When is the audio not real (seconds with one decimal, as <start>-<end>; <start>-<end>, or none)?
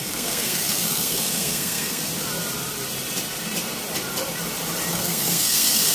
0.0-2.0; 4.9-5.9